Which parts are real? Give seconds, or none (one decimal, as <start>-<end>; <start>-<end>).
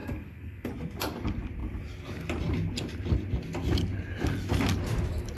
0.7-5.4